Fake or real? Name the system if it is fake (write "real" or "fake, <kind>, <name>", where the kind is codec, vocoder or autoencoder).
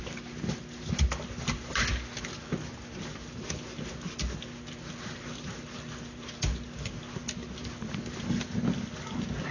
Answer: real